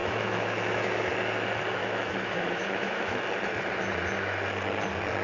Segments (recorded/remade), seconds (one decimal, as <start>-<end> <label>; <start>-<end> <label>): 0.0-1.1 remade; 1.1-1.8 recorded; 1.8-3.2 remade; 3.2-5.2 recorded